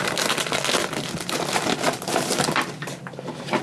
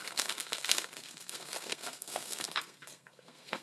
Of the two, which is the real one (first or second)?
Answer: first